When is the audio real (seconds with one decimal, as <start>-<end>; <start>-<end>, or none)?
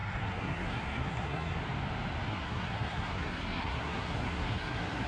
1.6-2.3